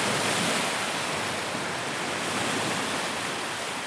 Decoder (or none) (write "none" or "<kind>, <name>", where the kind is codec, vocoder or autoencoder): none